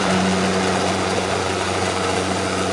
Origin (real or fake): fake